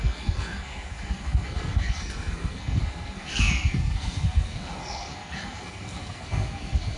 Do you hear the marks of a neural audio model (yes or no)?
yes